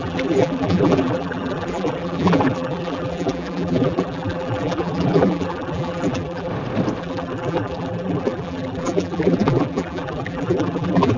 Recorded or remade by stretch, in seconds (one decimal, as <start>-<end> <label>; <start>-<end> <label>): 0.0-6.5 remade; 6.5-7.0 recorded; 7.0-11.2 remade